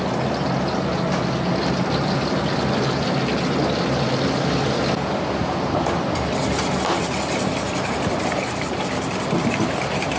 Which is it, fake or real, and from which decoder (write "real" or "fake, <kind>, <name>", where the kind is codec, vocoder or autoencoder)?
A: real